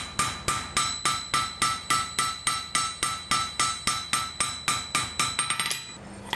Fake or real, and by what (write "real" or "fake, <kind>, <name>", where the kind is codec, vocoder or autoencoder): real